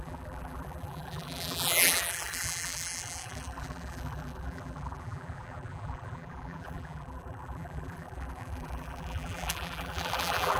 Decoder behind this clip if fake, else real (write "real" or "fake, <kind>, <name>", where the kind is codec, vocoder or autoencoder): fake, vocoder, BigVGAN v2